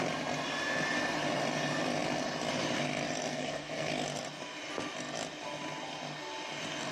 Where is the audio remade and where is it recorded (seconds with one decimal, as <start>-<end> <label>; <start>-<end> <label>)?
0.0-3.3 recorded; 3.3-3.9 remade; 3.9-6.9 recorded